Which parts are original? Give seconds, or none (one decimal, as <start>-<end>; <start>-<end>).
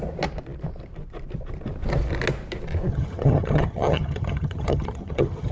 0.0-2.9